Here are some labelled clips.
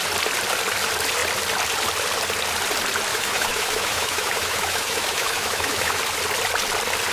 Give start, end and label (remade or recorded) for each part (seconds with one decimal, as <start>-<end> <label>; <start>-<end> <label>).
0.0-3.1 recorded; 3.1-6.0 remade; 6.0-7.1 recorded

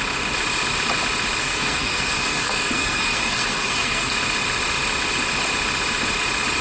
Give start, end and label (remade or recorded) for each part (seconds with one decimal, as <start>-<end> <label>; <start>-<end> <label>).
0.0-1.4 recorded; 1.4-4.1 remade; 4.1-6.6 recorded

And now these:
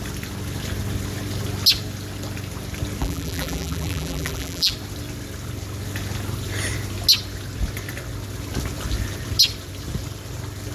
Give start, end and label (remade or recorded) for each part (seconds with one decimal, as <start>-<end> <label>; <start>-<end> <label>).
0.0-3.0 recorded; 3.0-4.7 remade; 4.7-10.7 recorded

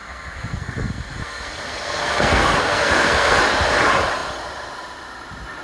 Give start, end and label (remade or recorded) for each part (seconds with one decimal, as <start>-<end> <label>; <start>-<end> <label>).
0.0-3.4 remade; 3.4-5.6 recorded

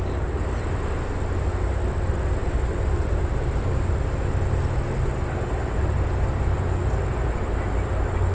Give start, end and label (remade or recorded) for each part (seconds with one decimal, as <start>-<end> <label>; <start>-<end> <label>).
0.0-8.3 recorded

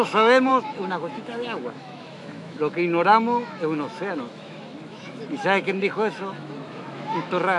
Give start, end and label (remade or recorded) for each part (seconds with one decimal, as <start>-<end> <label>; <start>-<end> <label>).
0.0-7.6 remade

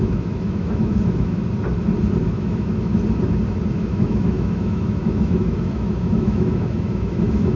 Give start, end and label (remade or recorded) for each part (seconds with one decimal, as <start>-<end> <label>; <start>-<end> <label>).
0.0-1.4 remade; 1.4-2.2 recorded; 2.2-2.9 remade; 2.9-3.7 recorded; 3.7-7.6 remade